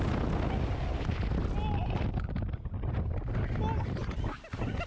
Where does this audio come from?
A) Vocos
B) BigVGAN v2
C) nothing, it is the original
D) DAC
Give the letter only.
C